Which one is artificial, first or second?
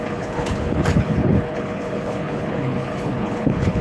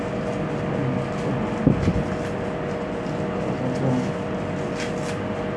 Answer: first